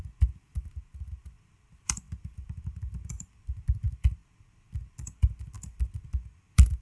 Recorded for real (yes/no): yes